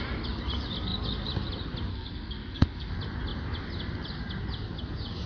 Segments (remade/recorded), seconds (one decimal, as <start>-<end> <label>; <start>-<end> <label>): 0.0-1.9 recorded; 1.9-2.9 remade; 2.9-5.3 recorded